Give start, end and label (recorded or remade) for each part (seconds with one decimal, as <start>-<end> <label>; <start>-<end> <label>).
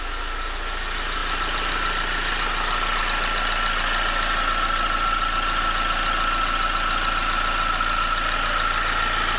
0.0-9.4 recorded